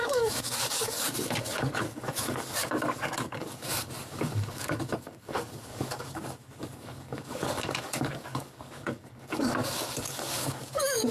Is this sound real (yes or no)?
no